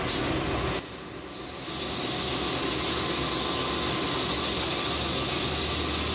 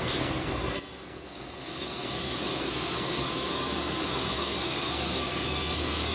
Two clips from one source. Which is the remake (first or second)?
second